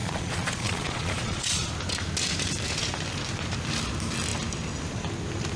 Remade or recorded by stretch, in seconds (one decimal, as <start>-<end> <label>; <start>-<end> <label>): 0.0-1.7 remade; 1.7-5.6 recorded